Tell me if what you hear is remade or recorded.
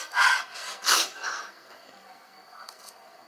remade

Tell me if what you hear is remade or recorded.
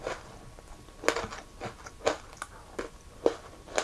recorded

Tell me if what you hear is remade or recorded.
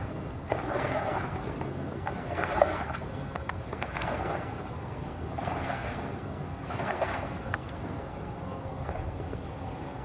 remade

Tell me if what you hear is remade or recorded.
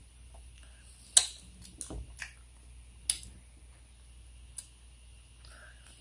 recorded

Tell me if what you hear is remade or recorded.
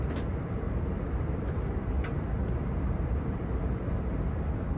recorded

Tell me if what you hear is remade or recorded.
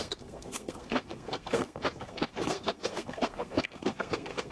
remade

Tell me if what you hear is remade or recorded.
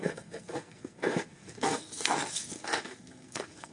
remade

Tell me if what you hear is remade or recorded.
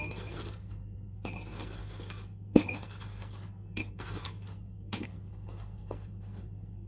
remade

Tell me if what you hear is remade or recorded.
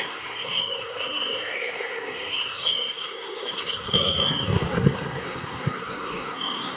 remade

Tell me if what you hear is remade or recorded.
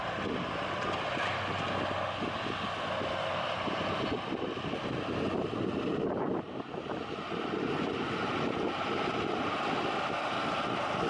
recorded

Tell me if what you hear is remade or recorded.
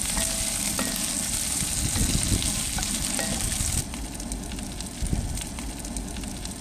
recorded